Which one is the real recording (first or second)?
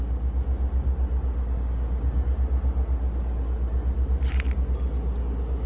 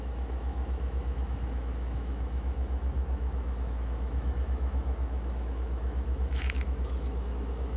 first